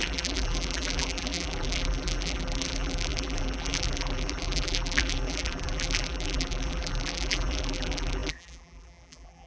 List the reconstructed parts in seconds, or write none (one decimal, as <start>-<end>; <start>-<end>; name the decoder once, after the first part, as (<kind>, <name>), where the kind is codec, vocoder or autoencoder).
0.0-9.5 (vocoder, BigVGAN v2)